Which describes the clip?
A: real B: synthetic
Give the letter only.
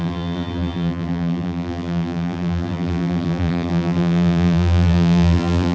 B